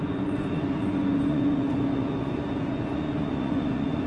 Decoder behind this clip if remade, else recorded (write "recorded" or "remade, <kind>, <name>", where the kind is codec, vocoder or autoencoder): remade, vocoder, Vocos